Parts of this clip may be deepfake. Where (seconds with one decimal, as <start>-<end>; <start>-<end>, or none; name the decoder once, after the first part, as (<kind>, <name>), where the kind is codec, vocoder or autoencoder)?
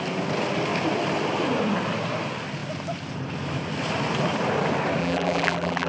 5.0-5.9 (vocoder, BigVGAN v2)